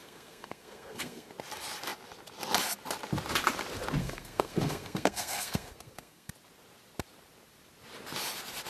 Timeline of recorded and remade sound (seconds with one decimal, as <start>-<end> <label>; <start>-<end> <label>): 0.0-1.3 remade; 1.3-4.0 recorded; 4.0-6.3 remade; 6.3-8.7 recorded